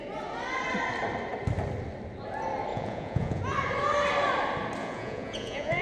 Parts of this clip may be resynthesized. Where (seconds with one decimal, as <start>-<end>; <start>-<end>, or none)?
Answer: 2.7-3.4; 4.8-5.8